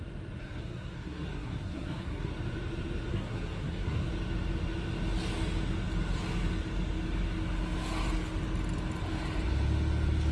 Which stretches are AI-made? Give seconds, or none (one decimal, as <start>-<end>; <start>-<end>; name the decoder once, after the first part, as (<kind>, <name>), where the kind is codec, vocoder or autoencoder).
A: 0.4-2.3 (codec, SNAC); 3.1-4.1